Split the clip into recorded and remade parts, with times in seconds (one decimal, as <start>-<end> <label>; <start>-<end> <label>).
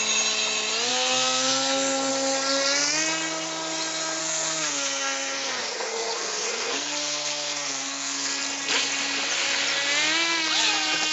0.0-0.9 recorded; 0.9-2.1 remade; 2.1-4.2 recorded; 4.2-8.4 remade; 8.4-11.1 recorded